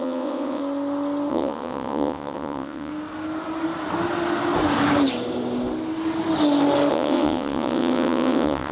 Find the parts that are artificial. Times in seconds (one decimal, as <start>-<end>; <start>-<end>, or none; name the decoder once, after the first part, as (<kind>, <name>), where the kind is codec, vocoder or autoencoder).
0.0-0.6 (vocoder, WaveNeXt); 1.3-2.9; 6.9-8.7